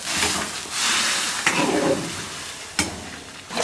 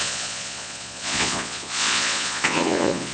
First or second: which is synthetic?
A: second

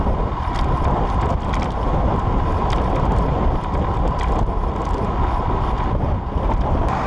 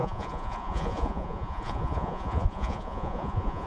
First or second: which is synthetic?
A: second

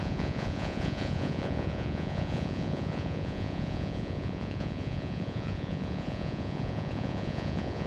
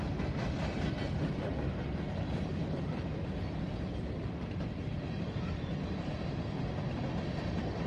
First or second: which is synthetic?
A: first